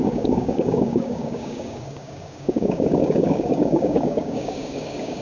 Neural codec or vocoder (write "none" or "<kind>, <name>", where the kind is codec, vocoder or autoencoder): codec, DAC